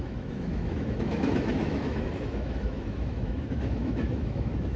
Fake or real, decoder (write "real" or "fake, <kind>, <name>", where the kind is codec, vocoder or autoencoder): fake, autoencoder, DAC-VAE